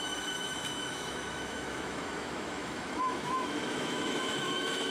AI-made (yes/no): yes